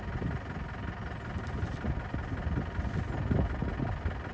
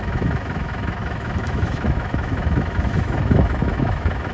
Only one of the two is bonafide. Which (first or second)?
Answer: first